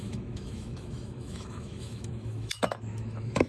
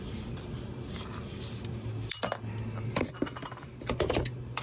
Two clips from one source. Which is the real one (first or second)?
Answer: second